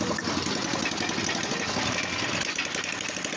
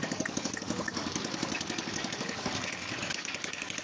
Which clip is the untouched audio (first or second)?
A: first